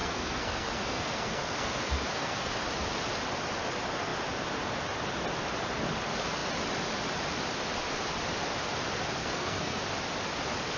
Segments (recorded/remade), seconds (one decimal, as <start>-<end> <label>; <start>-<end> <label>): 0.0-2.5 remade; 2.5-9.2 recorded; 9.2-9.8 remade; 9.8-10.8 recorded